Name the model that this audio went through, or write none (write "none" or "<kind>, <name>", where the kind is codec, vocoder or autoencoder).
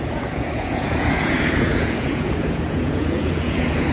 vocoder, Vocos